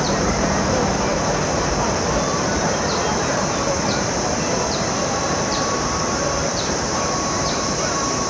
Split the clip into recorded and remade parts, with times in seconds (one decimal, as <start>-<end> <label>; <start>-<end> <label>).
0.0-1.1 remade; 1.1-1.7 recorded; 1.7-8.3 remade